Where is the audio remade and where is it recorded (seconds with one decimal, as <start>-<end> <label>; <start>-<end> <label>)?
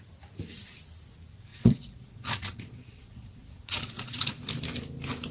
0.0-1.5 recorded; 1.5-4.4 remade; 4.4-5.3 recorded